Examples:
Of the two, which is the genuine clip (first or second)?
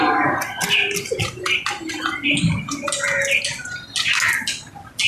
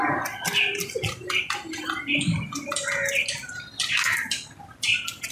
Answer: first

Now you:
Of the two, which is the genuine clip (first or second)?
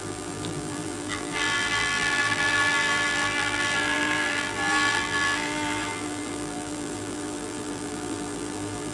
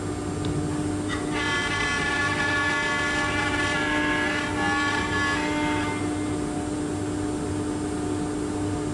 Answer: second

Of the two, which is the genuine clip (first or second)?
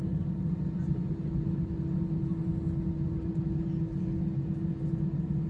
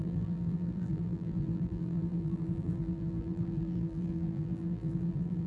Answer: first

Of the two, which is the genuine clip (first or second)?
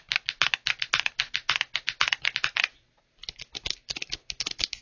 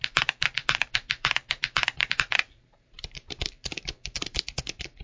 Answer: first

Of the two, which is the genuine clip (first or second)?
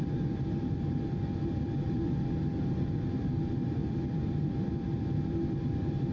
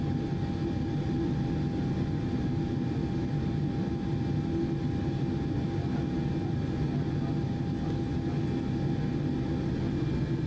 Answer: second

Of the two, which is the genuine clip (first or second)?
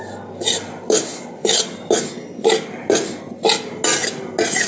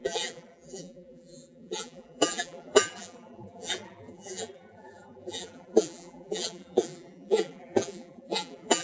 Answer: first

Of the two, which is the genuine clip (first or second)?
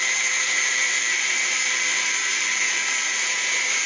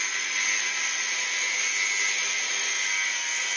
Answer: second